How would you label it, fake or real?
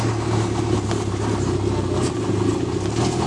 real